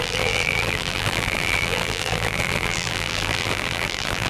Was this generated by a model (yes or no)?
yes